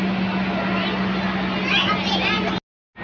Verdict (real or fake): real